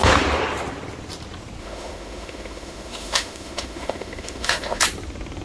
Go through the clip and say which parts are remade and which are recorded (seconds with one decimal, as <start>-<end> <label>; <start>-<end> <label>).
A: 0.0-1.6 recorded; 1.6-4.8 remade; 4.8-5.4 recorded